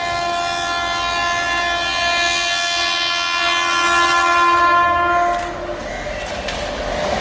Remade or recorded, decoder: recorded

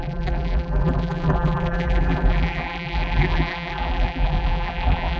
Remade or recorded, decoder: remade, vocoder, BigVGAN v2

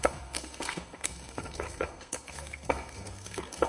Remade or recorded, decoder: remade, codec, SNAC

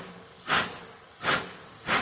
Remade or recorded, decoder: recorded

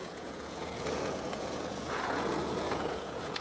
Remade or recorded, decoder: remade, vocoder, Vocos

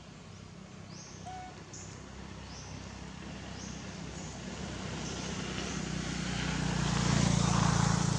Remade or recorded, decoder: recorded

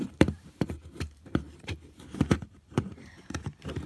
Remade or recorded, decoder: remade, vocoder, BigVGAN v2